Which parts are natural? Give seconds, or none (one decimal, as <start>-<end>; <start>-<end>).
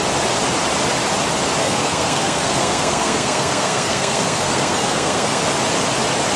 0.0-1.6; 5.4-6.4